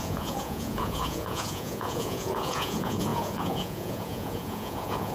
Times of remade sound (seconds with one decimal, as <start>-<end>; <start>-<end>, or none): 0.0-5.1